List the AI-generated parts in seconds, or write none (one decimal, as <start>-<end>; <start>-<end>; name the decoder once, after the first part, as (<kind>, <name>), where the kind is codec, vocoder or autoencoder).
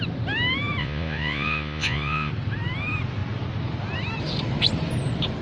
0.8-2.3 (vocoder, Vocos)